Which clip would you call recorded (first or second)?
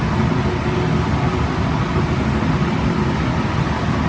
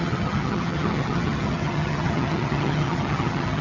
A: first